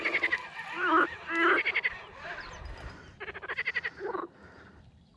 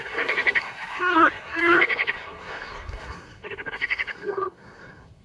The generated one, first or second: second